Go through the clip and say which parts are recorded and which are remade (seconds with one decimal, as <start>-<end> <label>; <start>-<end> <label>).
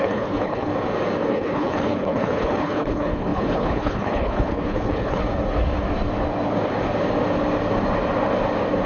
0.0-0.7 remade; 0.7-1.3 recorded; 1.3-5.2 remade; 5.2-8.9 recorded